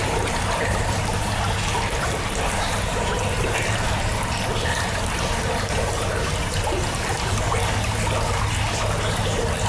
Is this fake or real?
real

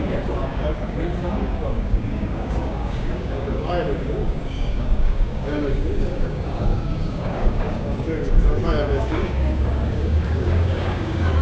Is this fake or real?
fake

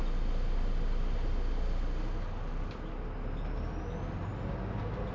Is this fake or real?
real